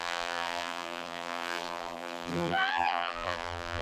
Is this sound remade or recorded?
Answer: remade